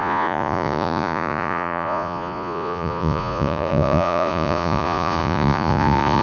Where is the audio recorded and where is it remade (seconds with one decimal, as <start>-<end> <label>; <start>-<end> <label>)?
0.0-6.2 remade